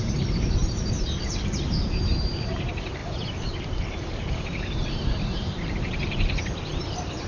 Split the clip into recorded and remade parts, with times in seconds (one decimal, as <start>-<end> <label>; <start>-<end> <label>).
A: 0.0-0.6 remade; 0.6-1.2 recorded; 1.2-3.0 remade; 3.0-3.6 recorded; 3.6-7.3 remade